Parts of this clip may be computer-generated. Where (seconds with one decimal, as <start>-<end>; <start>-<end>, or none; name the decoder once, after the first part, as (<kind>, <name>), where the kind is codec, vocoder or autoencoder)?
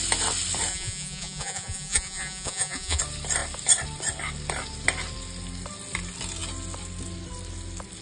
0.7-3.0 (vocoder, Vocos)